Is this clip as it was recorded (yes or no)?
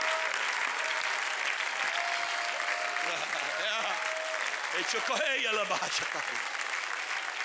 yes